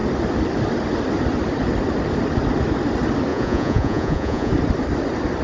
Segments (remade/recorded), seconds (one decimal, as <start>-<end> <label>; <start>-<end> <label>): 0.0-3.3 recorded; 3.3-4.5 remade; 4.5-5.4 recorded